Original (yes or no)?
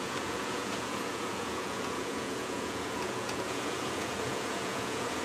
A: no